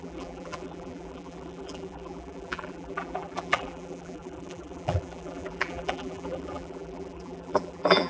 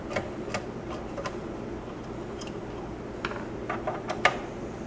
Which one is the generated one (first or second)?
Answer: first